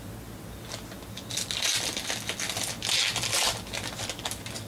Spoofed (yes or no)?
no